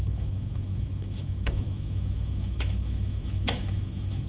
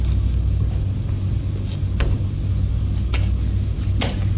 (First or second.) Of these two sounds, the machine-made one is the first